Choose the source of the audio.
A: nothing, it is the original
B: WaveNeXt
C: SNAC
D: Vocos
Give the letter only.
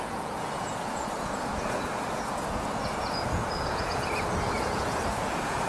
D